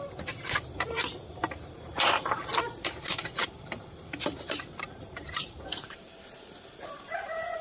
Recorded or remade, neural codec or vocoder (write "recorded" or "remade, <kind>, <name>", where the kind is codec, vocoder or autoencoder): remade, vocoder, BigVGAN v2